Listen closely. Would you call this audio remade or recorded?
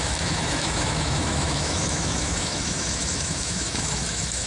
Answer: remade